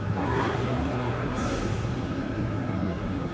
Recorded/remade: remade